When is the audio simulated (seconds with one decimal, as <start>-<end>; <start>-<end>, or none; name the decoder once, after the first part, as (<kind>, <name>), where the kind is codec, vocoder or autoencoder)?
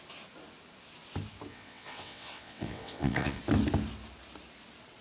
1.5-3.4 (vocoder, WaveNeXt)